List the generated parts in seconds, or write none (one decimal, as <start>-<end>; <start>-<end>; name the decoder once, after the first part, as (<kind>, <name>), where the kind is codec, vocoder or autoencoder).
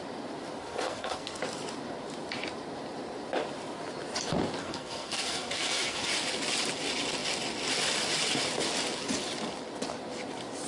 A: 0.6-1.4 (codec, SNAC); 4.6-6.1